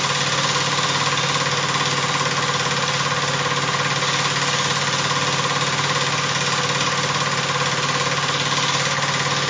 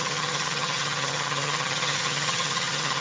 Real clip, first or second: first